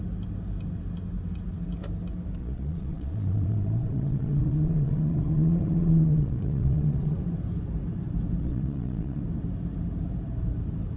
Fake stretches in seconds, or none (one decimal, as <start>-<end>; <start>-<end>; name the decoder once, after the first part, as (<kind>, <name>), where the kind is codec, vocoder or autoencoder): 2.4-7.2 (vocoder, Vocos); 8.4-9.2